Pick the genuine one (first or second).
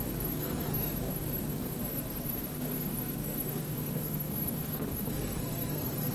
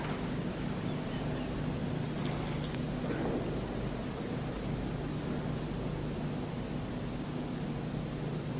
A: second